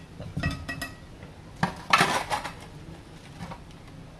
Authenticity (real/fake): real